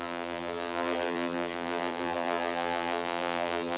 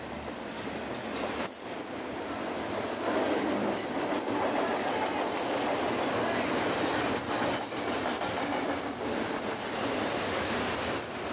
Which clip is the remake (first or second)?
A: first